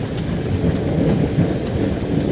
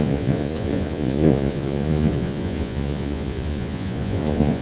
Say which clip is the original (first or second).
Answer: first